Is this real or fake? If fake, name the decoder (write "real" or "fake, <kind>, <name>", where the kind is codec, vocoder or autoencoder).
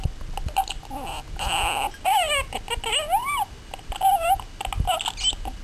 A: real